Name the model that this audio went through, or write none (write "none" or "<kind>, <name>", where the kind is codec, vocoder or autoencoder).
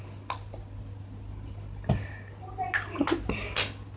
none